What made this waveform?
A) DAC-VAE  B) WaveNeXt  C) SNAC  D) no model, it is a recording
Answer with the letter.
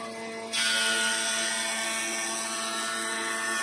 D